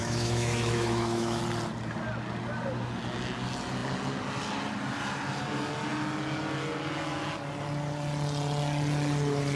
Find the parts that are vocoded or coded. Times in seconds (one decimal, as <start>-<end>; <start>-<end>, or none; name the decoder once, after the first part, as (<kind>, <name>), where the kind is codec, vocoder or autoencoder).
0.0-1.4 (autoencoder, DAC-VAE)